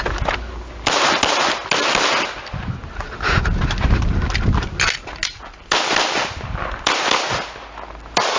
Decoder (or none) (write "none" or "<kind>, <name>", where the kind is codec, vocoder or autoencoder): none